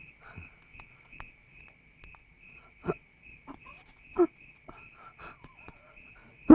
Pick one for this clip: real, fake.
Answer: fake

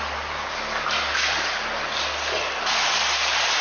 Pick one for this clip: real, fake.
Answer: real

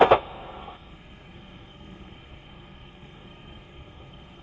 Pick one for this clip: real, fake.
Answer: fake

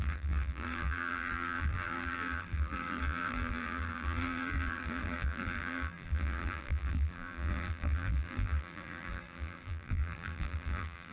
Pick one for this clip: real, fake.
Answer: fake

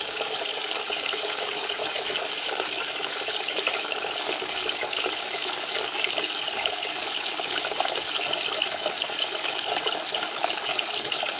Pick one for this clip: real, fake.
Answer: fake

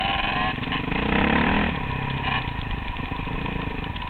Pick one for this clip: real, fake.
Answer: fake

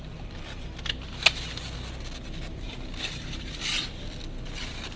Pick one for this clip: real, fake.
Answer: real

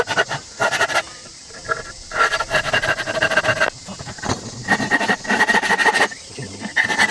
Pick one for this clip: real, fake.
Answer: real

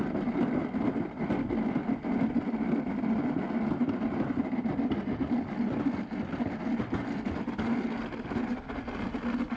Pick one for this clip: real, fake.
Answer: real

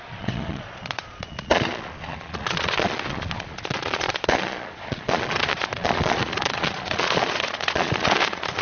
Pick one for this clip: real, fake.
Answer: fake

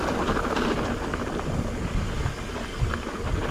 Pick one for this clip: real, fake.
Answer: real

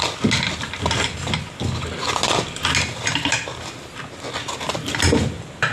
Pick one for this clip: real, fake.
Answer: real